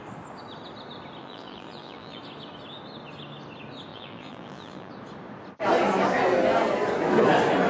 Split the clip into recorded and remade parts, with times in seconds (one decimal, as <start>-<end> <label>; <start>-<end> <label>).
0.0-1.2 recorded; 1.2-2.2 remade; 2.2-3.9 recorded; 3.9-4.9 remade; 4.9-7.7 recorded